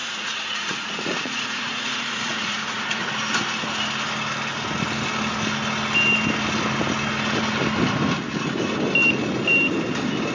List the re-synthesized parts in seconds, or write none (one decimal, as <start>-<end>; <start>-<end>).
0.0-3.1